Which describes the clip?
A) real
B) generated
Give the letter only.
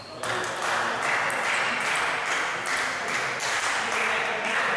A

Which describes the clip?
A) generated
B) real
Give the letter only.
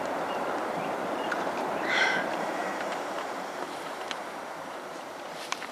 A